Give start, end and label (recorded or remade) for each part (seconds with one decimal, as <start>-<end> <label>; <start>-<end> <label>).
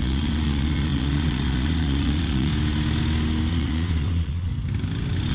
0.0-2.5 remade; 2.5-3.5 recorded; 3.5-4.5 remade; 4.5-5.3 recorded